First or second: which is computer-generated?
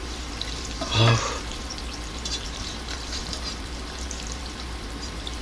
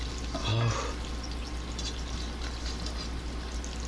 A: first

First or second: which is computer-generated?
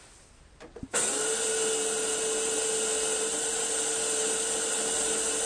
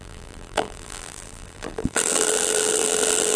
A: second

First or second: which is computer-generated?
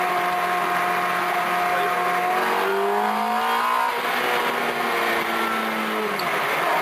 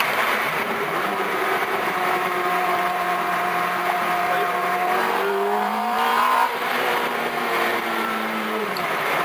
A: second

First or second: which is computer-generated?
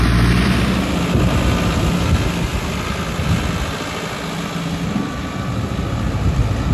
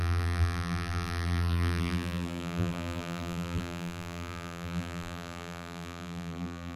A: second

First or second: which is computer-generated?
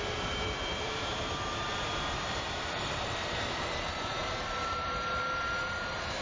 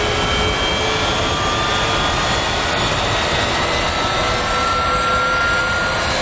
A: first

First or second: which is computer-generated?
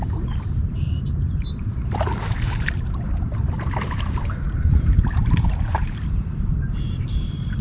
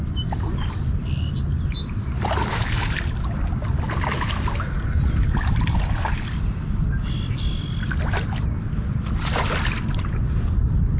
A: first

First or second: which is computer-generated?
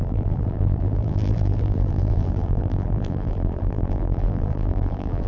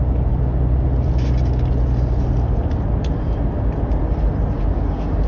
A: first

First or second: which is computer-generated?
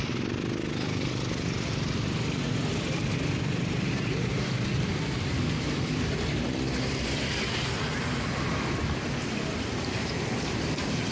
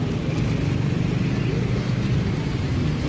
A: first